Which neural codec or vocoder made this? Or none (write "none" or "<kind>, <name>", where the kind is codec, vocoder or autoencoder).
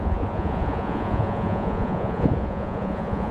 vocoder, Vocos